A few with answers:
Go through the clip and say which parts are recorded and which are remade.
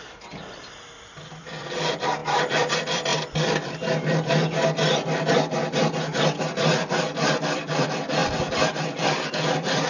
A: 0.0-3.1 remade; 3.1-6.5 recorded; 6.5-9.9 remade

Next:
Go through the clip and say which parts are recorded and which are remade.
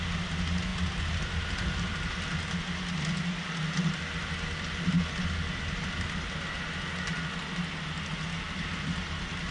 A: 0.0-9.5 recorded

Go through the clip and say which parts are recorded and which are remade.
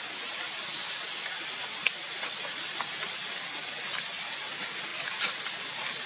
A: 0.0-4.9 recorded; 4.9-5.6 remade; 5.6-6.1 recorded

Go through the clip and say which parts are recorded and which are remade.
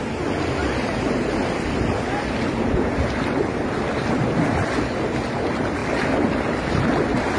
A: 0.0-0.6 recorded; 0.6-1.3 remade; 1.3-7.4 recorded